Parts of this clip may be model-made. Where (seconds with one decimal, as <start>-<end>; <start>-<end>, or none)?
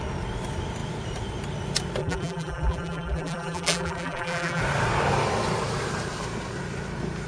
2.0-4.6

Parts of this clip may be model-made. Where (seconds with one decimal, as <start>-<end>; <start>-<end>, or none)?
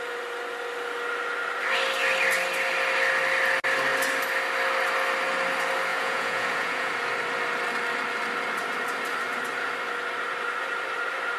5.9-6.9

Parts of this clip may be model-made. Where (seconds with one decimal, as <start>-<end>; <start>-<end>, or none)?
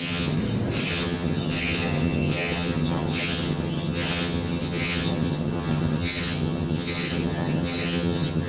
0.0-0.4; 0.9-8.5